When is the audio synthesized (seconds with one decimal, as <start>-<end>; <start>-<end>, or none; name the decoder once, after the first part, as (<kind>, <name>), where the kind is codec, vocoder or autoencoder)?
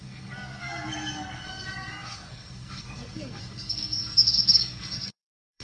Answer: 0.0-5.6 (codec, SNAC)